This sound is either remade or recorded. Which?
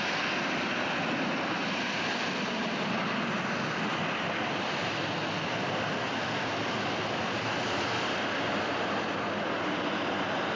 recorded